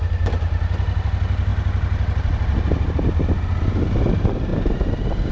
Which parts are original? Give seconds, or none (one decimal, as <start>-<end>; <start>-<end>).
0.0-5.3